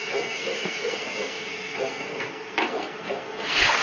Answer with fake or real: fake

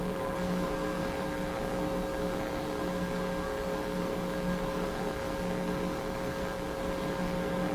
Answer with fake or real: fake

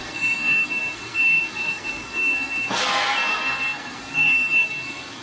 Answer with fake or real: fake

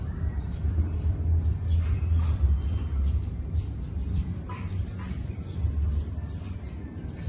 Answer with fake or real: real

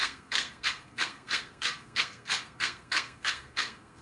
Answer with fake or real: fake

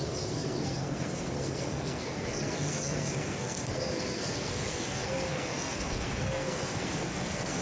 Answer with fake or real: fake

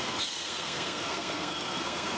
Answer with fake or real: fake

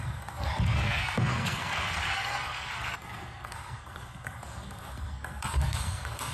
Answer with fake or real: fake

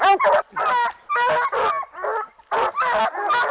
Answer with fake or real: real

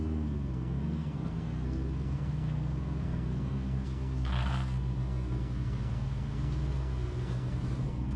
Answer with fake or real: fake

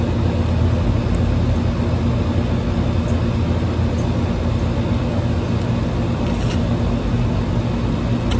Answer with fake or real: real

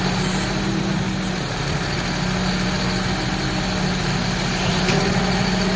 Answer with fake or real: real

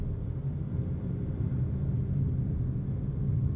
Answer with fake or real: real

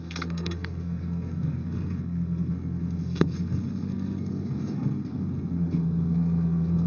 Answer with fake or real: fake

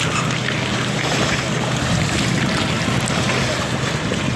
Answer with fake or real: real